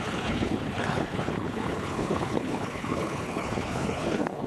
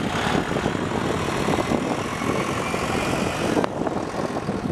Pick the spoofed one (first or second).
first